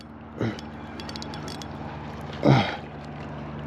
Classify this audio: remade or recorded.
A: recorded